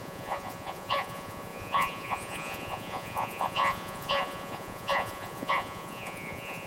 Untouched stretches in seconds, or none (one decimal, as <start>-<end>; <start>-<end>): none